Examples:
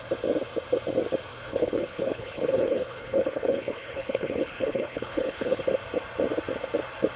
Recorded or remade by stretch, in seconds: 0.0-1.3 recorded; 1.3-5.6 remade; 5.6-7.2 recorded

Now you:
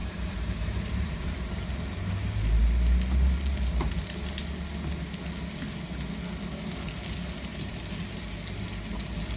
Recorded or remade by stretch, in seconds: 0.0-1.3 remade; 1.3-7.5 recorded; 7.5-8.2 remade; 8.2-9.4 recorded

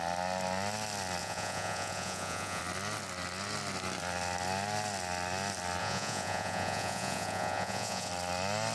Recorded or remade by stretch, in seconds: 0.0-1.2 recorded; 1.2-2.6 remade; 2.6-5.8 recorded; 5.8-8.1 remade; 8.1-8.7 recorded

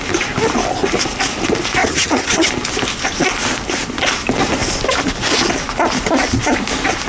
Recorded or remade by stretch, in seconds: 0.0-1.8 recorded; 1.8-2.5 remade; 2.5-7.1 recorded

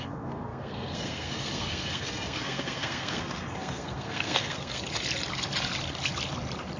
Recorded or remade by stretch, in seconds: 0.0-4.8 remade; 4.8-6.8 recorded

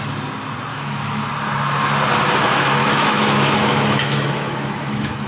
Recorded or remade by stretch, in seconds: 0.0-0.7 recorded; 0.7-1.3 remade; 1.3-2.8 recorded; 2.8-5.3 remade